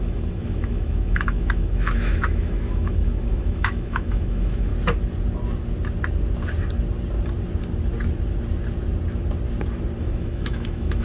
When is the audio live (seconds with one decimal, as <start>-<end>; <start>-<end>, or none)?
4.7-10.0